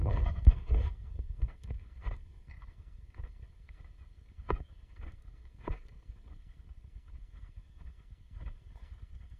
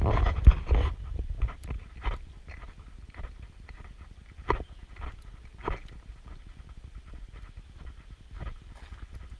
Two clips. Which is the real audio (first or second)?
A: second